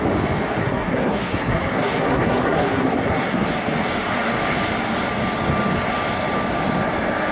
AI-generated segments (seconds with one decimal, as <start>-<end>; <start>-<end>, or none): 0.6-3.5